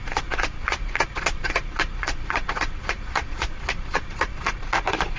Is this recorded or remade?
remade